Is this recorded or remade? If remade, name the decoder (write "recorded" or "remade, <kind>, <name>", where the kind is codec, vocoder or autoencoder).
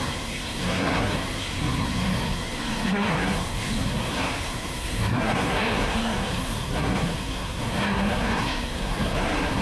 remade, codec, SNAC